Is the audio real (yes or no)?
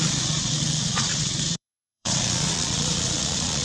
no